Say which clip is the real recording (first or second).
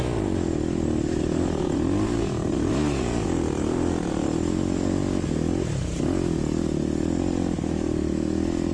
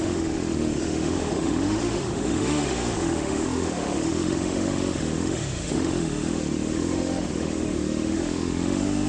first